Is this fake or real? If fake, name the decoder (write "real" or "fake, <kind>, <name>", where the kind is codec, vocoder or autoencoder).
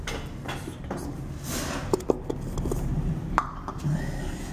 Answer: real